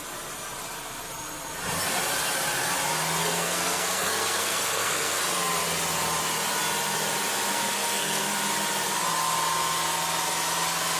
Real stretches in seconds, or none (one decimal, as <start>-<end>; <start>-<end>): 0.0-3.2; 5.2-7.5; 8.3-11.0